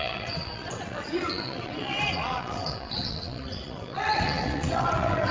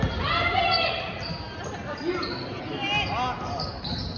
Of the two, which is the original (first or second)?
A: second